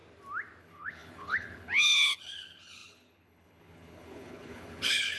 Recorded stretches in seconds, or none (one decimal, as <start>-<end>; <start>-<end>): 0.0-0.6